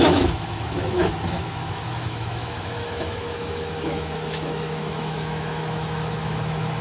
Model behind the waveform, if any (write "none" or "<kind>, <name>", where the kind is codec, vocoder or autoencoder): autoencoder, DAC-VAE